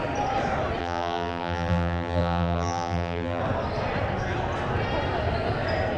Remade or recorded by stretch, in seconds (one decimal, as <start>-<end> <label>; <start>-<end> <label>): 0.0-0.8 recorded; 0.8-3.4 remade; 3.4-6.0 recorded